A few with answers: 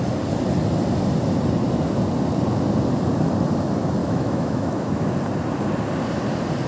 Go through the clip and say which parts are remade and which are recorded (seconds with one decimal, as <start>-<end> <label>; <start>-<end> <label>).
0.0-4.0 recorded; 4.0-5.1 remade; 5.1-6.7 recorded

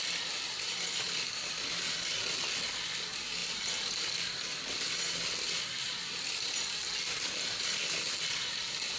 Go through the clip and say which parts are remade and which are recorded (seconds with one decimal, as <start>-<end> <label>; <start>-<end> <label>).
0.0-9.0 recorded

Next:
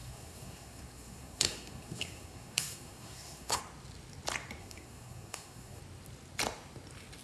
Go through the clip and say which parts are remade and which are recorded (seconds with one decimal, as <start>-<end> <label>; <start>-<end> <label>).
0.0-3.6 remade; 3.6-4.6 recorded; 4.6-5.8 remade; 5.8-7.2 recorded